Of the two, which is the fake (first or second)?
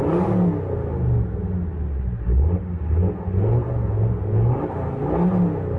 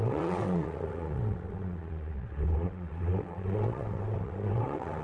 second